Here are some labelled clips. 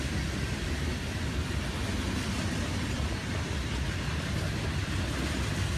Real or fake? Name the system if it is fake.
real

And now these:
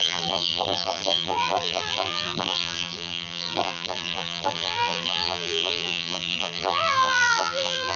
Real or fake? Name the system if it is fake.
fake, vocoder, BigVGAN v2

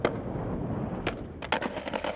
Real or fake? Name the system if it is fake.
real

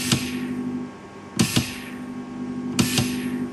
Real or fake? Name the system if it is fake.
real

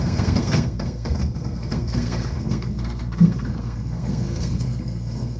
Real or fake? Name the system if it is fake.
fake, codec, SNAC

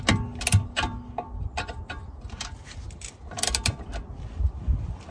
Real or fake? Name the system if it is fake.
real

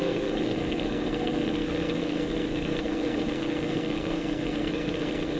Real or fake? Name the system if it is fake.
fake, codec, SNAC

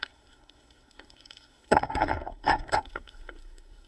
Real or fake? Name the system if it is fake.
fake, codec, SNAC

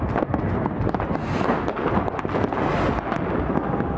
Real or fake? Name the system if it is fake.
real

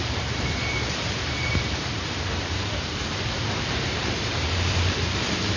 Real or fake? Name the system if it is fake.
fake, vocoder, BigVGAN v2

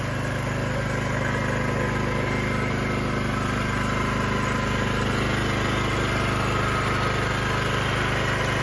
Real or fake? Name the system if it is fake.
real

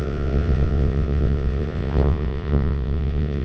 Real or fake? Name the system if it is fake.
fake, vocoder, WaveNeXt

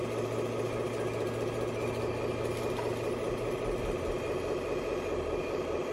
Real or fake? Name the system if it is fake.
real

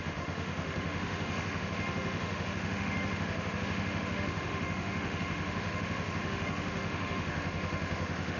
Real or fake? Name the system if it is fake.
fake, autoencoder, DAC-VAE